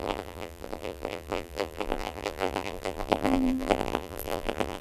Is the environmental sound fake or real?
fake